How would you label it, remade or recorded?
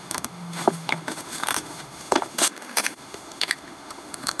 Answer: remade